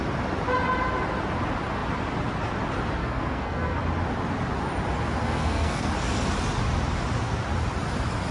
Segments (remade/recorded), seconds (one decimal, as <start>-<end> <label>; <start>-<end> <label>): 0.0-3.0 recorded; 3.0-3.8 remade; 3.8-5.2 recorded; 5.2-5.9 remade; 5.9-8.3 recorded